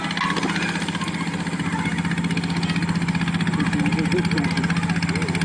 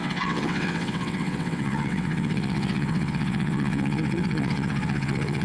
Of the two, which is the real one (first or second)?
first